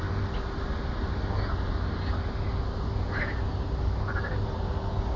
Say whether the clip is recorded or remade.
recorded